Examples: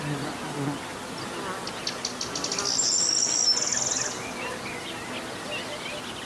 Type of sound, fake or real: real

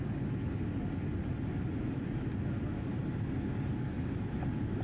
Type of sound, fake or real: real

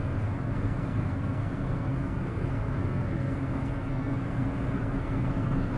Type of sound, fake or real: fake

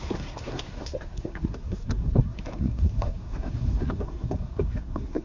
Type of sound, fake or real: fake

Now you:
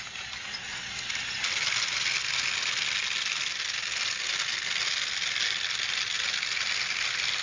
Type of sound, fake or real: real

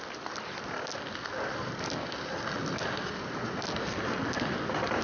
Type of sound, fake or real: real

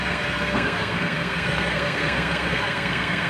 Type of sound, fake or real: fake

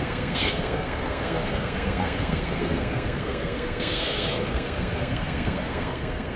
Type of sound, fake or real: fake